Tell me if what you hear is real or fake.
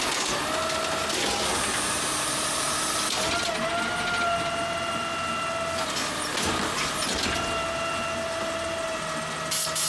real